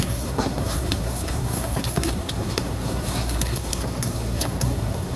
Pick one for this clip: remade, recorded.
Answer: remade